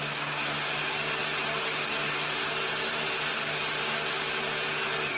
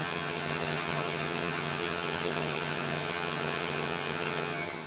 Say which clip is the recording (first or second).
first